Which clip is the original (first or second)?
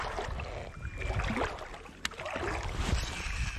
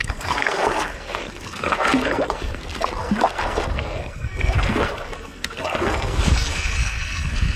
first